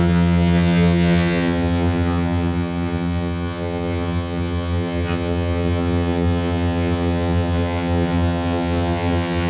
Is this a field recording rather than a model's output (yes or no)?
no